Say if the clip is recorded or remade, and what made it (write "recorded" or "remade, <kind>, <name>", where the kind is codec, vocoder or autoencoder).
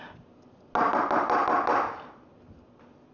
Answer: recorded